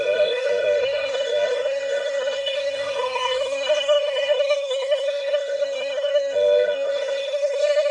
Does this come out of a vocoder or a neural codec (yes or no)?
yes